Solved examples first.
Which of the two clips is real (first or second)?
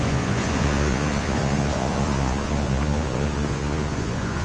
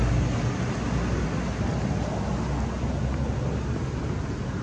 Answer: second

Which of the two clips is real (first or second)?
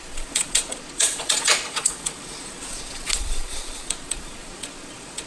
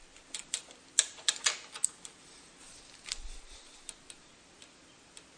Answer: second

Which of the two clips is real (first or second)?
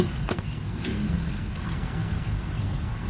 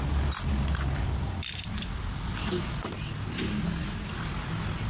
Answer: second